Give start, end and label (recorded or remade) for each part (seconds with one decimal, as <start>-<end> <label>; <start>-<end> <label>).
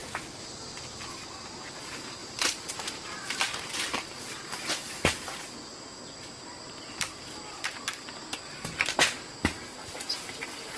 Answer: 0.0-2.2 recorded; 2.2-3.4 remade; 3.4-10.8 recorded